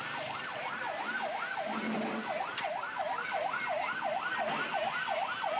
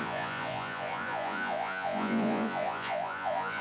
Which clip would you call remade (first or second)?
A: second